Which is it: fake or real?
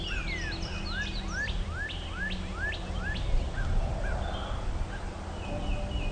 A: real